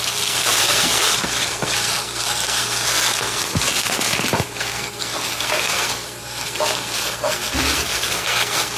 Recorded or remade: remade